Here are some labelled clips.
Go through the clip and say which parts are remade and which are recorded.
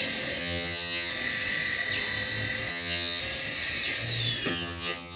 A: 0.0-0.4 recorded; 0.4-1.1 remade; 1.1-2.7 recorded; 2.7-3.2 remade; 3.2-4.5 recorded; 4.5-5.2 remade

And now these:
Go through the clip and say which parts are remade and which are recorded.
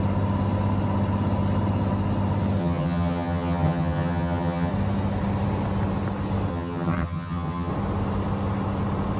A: 0.0-2.6 recorded; 2.6-4.7 remade; 4.7-6.5 recorded; 6.5-7.7 remade; 7.7-9.2 recorded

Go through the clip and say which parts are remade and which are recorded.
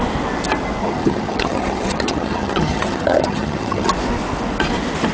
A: 0.0-0.8 recorded; 0.8-3.9 remade; 3.9-5.1 recorded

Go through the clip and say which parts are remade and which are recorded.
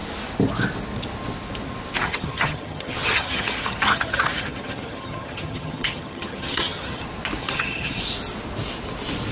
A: 0.0-2.0 recorded; 2.0-7.0 remade; 7.0-7.4 recorded; 7.4-8.0 remade; 8.0-9.3 recorded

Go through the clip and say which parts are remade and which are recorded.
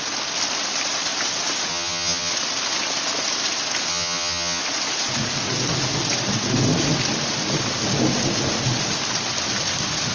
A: 0.0-1.7 recorded; 1.7-2.3 remade; 2.3-3.9 recorded; 3.9-4.6 remade; 4.6-10.1 recorded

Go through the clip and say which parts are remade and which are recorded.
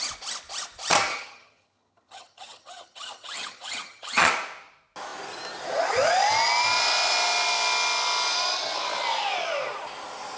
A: 0.0-1.1 recorded; 1.1-4.3 remade; 4.3-10.4 recorded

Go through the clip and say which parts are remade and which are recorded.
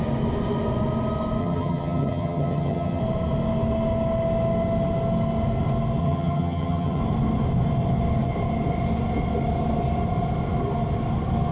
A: 0.0-1.4 recorded; 1.4-3.0 remade; 3.0-6.0 recorded; 6.0-7.0 remade; 7.0-11.5 recorded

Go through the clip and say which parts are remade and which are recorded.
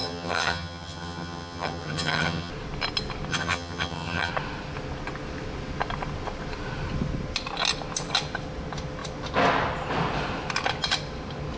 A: 0.0-2.5 remade; 2.5-3.3 recorded; 3.3-4.3 remade; 4.3-11.6 recorded